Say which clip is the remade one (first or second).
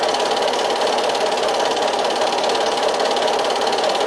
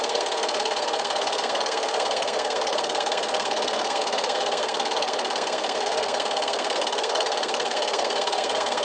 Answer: second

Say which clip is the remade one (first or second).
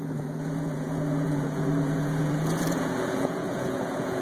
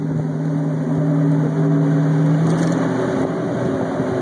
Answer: first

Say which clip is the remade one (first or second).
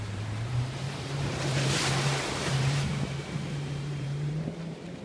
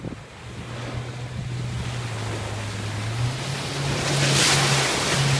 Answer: first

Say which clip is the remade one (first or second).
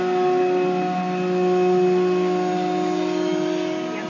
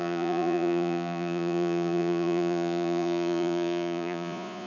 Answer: second